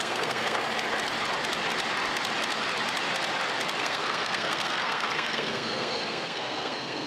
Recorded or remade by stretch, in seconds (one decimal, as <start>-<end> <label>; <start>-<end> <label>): 0.0-0.6 remade; 0.6-3.8 recorded; 3.8-7.1 remade